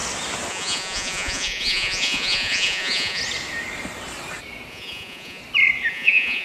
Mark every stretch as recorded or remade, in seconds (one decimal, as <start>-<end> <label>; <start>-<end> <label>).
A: 0.0-0.5 recorded; 0.5-3.2 remade; 3.2-4.7 recorded; 4.7-5.4 remade; 5.4-5.9 recorded; 5.9-6.4 remade